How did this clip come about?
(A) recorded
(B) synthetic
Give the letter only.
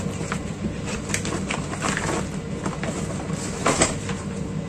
A